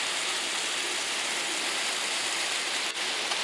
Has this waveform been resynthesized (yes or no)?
no